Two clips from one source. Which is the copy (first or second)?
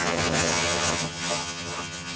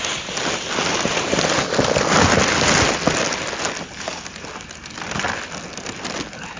first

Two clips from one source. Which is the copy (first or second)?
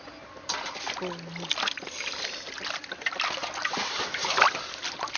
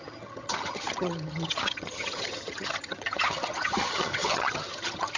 second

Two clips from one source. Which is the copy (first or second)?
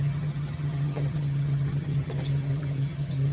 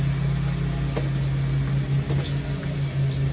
first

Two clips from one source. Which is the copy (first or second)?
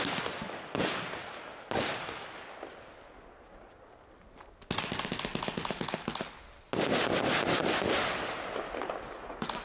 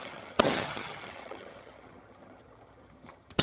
second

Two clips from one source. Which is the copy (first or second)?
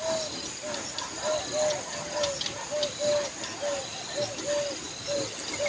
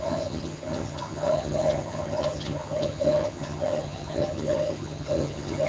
second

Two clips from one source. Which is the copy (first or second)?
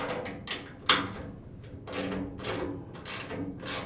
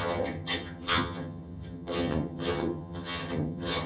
second